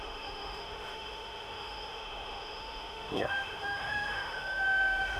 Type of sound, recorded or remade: remade